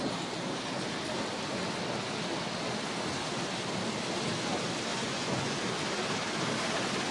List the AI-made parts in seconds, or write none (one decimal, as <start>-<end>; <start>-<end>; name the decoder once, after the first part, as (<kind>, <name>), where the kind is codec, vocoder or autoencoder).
4.9-5.6 (vocoder, Vocos)